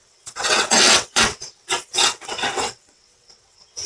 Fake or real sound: fake